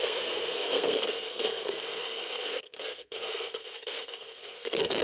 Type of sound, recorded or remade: remade